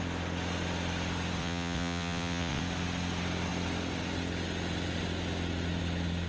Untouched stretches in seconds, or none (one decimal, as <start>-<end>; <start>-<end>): 0.0-1.4; 2.6-6.3